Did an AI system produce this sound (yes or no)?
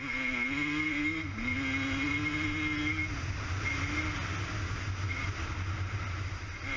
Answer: no